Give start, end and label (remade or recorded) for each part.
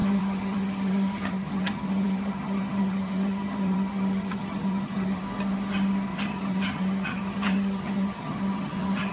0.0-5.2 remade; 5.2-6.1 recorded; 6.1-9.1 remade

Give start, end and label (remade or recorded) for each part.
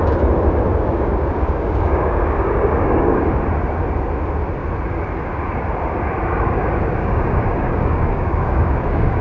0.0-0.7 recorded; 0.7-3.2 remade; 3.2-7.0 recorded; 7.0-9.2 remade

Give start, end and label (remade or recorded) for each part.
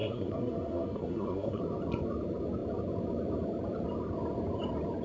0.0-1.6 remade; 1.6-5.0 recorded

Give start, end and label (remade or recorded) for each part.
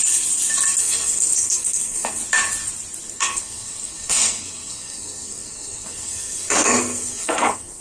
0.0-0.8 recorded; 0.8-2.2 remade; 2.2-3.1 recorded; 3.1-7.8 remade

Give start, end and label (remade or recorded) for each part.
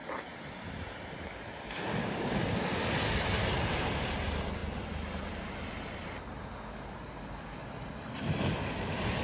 0.0-2.0 recorded; 2.0-2.6 remade; 2.6-9.2 recorded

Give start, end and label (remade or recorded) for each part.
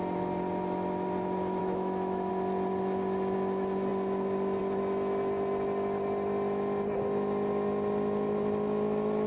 0.0-1.6 recorded; 1.6-2.3 remade; 2.3-9.3 recorded